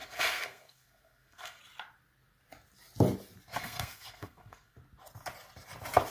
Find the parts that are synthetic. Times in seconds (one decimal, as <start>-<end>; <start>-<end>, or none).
0.0-1.6; 3.6-4.8